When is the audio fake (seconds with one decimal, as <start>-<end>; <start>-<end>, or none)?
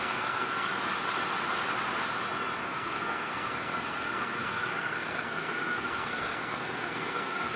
0.0-0.7; 2.6-7.6